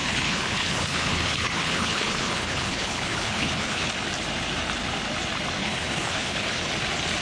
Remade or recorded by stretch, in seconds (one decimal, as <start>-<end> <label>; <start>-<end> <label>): 0.0-3.9 remade; 3.9-5.6 recorded; 5.6-6.7 remade; 6.7-7.2 recorded